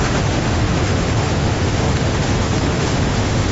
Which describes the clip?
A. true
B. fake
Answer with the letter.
B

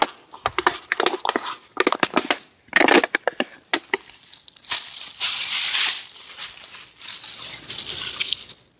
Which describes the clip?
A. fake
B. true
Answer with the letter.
B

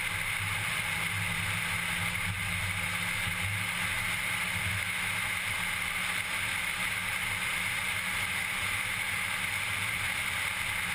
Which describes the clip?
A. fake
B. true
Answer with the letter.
B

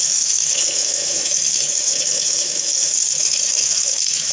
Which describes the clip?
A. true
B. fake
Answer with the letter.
B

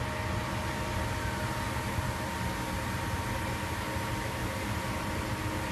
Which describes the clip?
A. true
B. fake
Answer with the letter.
A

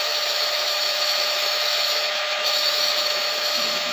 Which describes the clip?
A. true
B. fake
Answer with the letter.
B